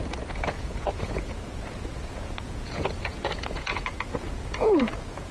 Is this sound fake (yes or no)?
yes